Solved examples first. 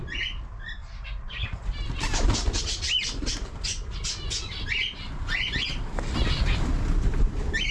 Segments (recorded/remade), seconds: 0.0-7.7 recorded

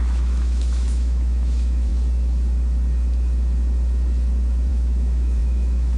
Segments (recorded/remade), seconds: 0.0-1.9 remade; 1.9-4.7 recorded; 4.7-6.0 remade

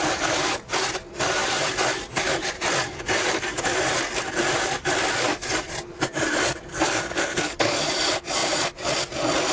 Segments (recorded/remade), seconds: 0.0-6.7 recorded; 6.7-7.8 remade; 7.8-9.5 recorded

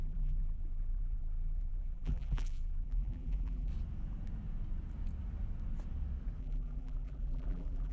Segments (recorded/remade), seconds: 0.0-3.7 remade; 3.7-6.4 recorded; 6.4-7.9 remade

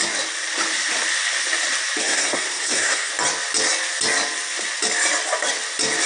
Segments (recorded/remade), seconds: 0.0-2.0 recorded; 2.0-3.1 remade; 3.1-6.1 recorded